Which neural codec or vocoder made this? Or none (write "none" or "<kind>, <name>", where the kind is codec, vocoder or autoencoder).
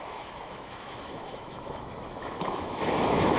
autoencoder, DAC-VAE